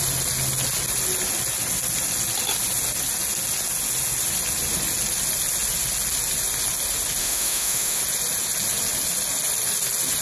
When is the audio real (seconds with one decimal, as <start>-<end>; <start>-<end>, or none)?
0.0-7.2; 8.0-10.2